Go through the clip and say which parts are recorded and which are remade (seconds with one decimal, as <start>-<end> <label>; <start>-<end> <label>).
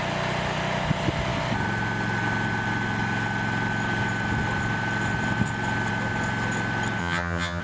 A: 0.0-7.0 recorded; 7.0-7.6 remade